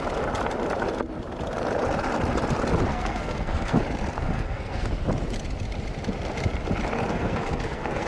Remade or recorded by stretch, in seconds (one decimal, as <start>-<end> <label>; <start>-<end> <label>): 0.0-2.9 recorded; 2.9-3.8 remade; 3.8-4.2 recorded; 4.2-4.9 remade; 4.9-7.1 recorded; 7.1-8.1 remade